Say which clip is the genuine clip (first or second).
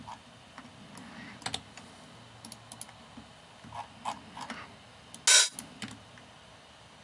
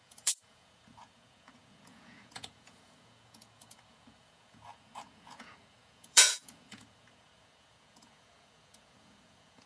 first